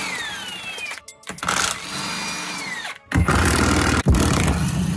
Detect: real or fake real